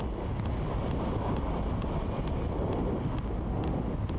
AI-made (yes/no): no